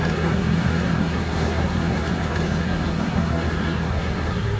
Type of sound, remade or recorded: remade